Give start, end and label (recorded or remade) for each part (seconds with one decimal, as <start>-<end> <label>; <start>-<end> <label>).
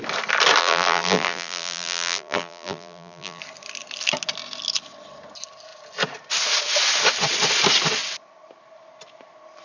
0.0-0.6 recorded; 0.6-3.4 remade; 3.4-9.6 recorded